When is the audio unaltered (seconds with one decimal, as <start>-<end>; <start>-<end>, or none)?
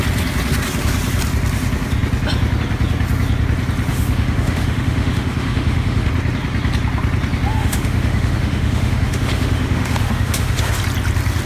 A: 0.0-3.9; 6.1-7.5; 10.8-11.5